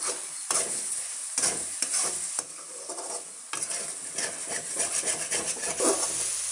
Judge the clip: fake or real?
real